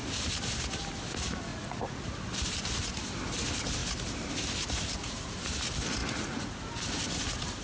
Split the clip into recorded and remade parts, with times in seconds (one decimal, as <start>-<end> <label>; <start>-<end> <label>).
0.0-1.5 recorded; 1.5-2.0 remade; 2.0-6.0 recorded; 6.0-6.5 remade; 6.5-7.6 recorded